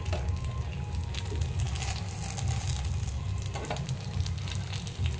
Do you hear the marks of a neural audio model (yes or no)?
no